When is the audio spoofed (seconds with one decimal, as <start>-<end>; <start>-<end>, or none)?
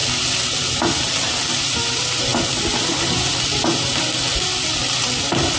none